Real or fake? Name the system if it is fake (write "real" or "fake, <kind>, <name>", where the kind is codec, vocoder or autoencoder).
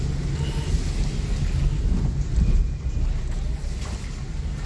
real